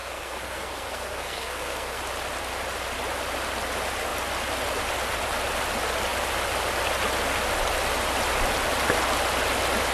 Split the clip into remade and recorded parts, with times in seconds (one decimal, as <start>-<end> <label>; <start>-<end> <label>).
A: 0.0-2.0 remade; 2.0-9.9 recorded